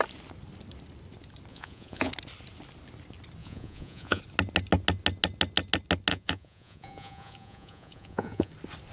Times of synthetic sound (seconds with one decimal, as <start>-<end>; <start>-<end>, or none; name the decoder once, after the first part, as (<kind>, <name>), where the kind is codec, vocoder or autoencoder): 1.5-2.1 (vocoder, Vocos); 3.4-4.2; 6.1-8.5